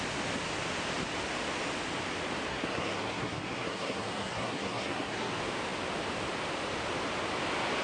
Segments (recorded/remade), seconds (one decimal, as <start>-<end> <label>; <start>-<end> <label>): 0.0-2.5 recorded; 2.5-5.3 remade; 5.3-7.8 recorded